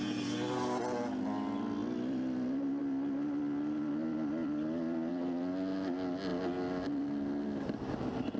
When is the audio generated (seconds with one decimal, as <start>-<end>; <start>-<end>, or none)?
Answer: 1.8-2.8; 4.0-5.1